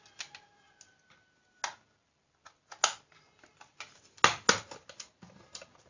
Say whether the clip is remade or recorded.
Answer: recorded